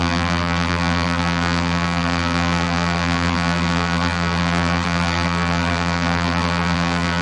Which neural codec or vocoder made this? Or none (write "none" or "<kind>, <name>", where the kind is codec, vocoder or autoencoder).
vocoder, BigVGAN v2